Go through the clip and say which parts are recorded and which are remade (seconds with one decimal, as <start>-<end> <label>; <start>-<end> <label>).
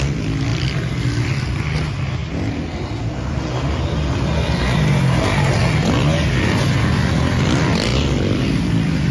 0.0-0.5 recorded; 0.5-1.6 remade; 1.6-7.9 recorded; 7.9-9.1 remade